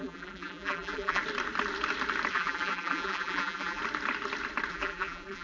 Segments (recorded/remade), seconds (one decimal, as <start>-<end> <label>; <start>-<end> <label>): 0.0-1.2 remade; 1.2-2.3 recorded; 2.3-3.8 remade; 3.8-4.7 recorded; 4.7-5.4 remade